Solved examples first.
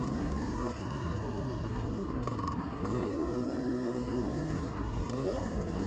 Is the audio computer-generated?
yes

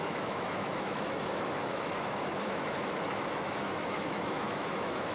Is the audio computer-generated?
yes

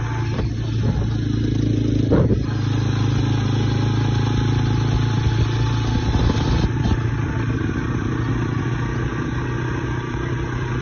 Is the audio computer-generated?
no